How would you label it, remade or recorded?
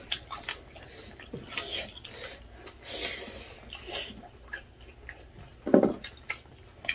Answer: recorded